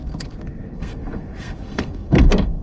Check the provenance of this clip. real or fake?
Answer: fake